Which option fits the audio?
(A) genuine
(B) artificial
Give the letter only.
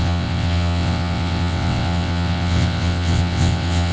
B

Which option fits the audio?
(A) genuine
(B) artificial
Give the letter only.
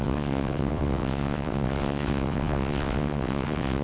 B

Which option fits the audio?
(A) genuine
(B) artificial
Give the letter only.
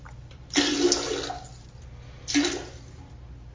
A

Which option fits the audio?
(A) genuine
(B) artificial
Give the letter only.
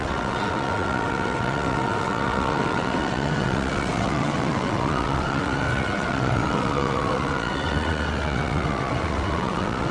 B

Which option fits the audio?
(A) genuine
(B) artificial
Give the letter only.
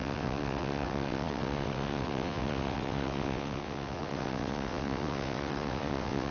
B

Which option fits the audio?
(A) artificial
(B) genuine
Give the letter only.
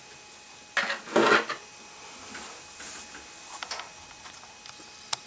B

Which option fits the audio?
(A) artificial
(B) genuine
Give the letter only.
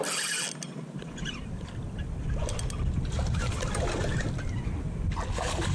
B